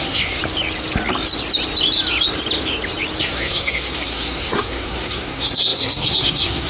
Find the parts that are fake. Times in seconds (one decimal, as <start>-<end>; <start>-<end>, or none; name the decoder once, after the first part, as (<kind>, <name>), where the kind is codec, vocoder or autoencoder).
0.0-0.4 (codec, SNAC); 3.2-6.7